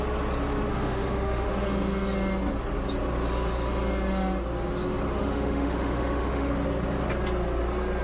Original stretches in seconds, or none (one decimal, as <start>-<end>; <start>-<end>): 0.0-0.7; 1.5-5.1; 6.5-8.0